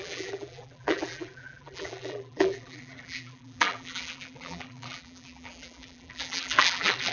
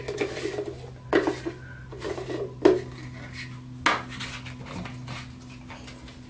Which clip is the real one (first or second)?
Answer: second